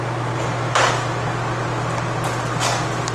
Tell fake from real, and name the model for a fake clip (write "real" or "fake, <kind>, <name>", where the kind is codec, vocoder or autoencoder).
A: real